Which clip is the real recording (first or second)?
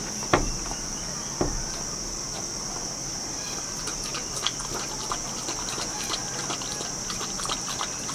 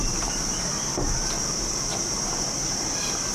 first